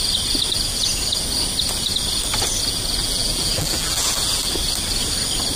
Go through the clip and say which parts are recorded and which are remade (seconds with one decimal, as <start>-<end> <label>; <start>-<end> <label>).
0.0-3.0 recorded; 3.0-4.5 remade; 4.5-5.6 recorded